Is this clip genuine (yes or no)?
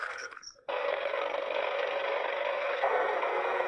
no